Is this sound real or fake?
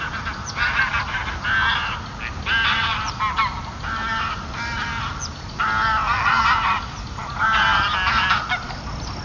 real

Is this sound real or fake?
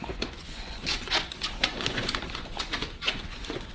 fake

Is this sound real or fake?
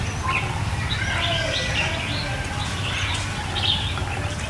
real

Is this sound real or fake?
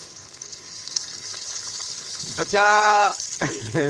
fake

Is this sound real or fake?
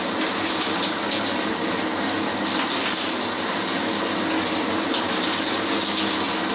real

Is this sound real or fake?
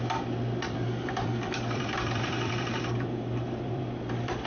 fake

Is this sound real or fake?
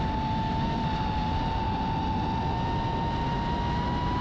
real